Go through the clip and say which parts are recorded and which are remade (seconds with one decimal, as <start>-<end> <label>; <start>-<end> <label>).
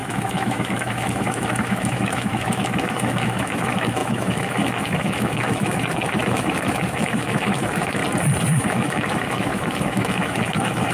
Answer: 0.0-8.0 remade; 8.0-8.6 recorded; 8.6-10.9 remade